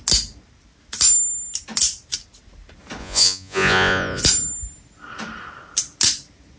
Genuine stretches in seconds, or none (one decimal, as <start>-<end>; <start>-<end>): 0.0-3.0; 4.2-6.6